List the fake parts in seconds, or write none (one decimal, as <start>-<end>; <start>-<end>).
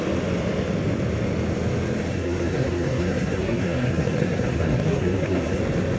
2.1-5.6